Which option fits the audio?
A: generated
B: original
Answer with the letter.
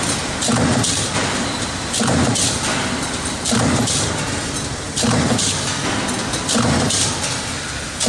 A